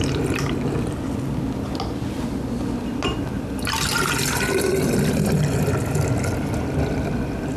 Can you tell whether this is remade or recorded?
recorded